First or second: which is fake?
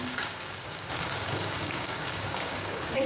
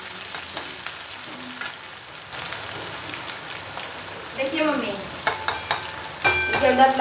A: first